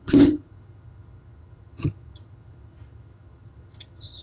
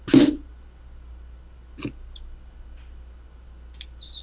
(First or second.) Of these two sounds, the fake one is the first